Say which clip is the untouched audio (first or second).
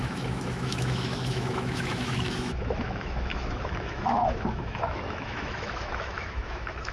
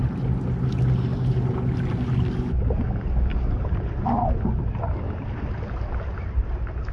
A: second